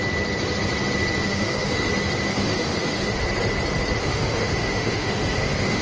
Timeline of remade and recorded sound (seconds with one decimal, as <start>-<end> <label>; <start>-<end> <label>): 0.0-1.2 recorded; 1.2-1.9 remade; 1.9-2.3 recorded; 2.3-3.2 remade; 3.2-4.0 recorded; 4.0-5.8 remade